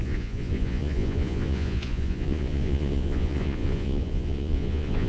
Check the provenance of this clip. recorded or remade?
remade